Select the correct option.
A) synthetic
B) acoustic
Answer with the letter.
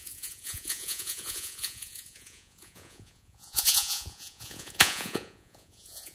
A